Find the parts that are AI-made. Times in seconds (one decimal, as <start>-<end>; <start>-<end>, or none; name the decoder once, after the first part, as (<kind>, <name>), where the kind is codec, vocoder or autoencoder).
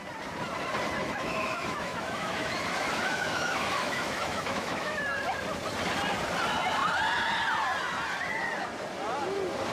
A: 1.0-5.0 (autoencoder, DAC-VAE)